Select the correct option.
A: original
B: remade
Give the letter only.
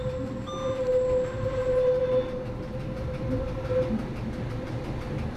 A